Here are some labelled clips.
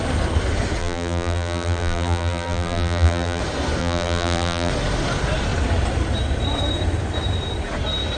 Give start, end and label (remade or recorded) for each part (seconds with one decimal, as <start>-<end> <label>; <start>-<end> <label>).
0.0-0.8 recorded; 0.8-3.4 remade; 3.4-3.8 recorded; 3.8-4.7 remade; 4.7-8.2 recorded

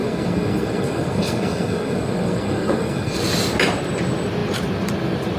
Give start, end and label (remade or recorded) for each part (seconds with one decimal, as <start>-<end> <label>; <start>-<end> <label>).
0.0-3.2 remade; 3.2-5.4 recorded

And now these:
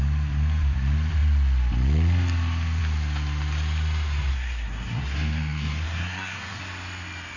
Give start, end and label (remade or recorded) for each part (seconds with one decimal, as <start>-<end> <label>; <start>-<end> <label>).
0.0-4.3 recorded; 4.3-6.6 remade; 6.6-7.4 recorded